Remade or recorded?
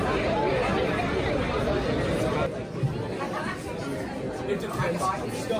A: recorded